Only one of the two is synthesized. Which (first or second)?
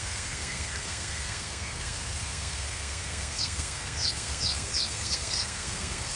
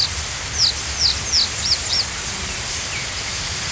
first